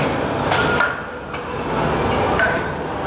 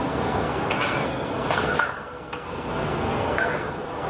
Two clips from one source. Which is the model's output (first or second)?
second